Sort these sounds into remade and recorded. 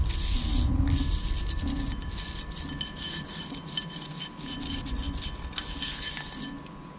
recorded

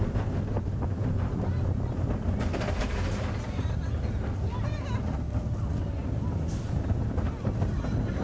recorded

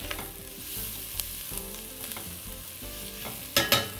recorded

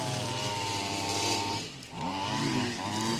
remade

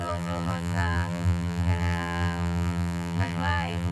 remade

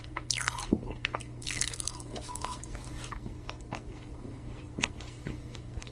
remade